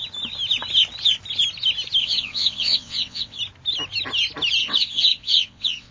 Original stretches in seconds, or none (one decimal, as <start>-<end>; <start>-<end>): 0.0-2.0; 3.4-4.6